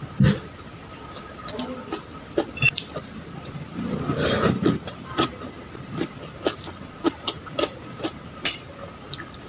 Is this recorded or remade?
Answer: remade